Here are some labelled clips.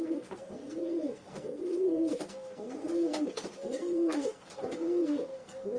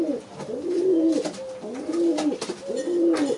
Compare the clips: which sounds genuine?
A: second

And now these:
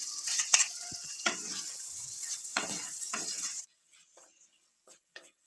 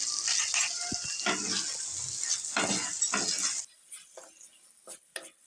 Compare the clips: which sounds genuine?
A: second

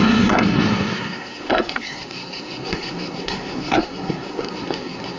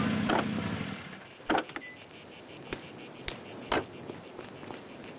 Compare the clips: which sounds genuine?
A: second